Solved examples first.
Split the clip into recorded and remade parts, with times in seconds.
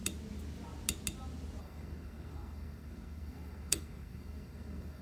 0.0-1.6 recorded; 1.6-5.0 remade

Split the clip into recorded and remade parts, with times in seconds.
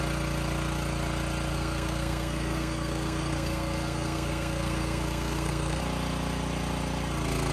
0.0-1.5 recorded; 1.5-5.8 remade; 5.8-7.5 recorded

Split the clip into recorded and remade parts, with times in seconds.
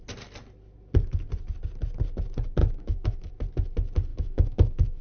0.0-2.6 recorded; 2.6-3.3 remade; 3.3-4.1 recorded; 4.1-5.0 remade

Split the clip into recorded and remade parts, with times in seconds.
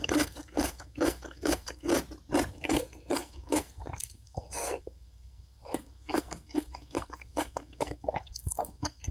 0.0-1.9 remade; 1.9-2.5 recorded; 2.5-9.1 remade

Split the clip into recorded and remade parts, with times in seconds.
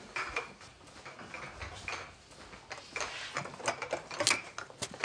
0.0-5.0 recorded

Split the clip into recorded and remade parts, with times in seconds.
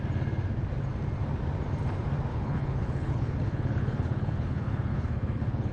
0.0-2.3 recorded; 2.3-5.7 remade